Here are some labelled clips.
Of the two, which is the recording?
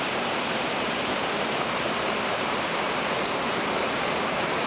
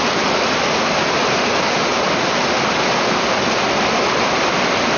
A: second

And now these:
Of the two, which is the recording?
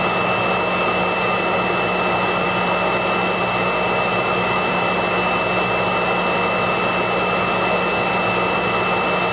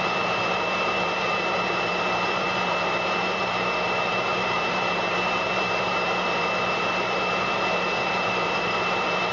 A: first